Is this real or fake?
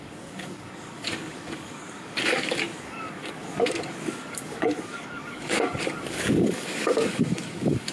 fake